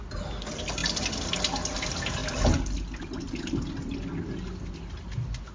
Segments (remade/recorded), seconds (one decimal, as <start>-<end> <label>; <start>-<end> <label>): 0.0-5.5 recorded